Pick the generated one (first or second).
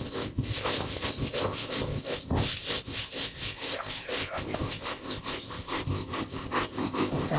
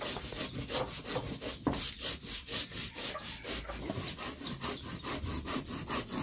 first